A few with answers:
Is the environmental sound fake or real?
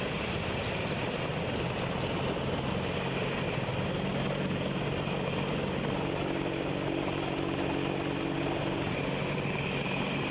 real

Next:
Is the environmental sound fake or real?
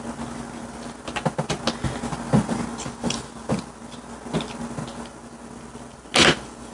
real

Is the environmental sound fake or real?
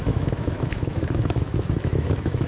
fake